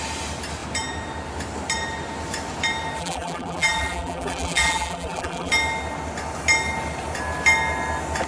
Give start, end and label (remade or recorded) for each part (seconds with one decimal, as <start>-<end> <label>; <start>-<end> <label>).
0.0-3.0 recorded; 3.0-5.5 remade; 5.5-8.3 recorded